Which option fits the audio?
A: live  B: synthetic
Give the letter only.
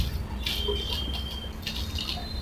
A